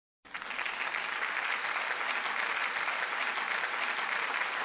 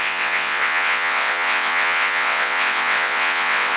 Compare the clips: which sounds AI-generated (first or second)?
second